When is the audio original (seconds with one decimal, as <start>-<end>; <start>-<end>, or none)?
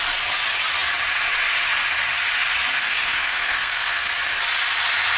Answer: 0.0-2.8; 4.1-5.2